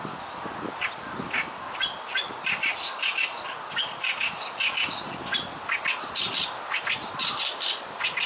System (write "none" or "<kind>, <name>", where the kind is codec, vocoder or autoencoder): none